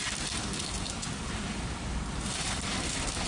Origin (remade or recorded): recorded